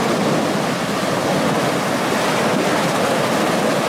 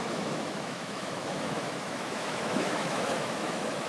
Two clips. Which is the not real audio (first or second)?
second